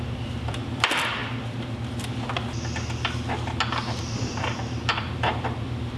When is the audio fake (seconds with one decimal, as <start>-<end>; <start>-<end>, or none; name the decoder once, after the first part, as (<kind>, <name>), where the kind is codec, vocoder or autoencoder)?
0.0-1.2 (vocoder, BigVGAN v2); 4.0-6.0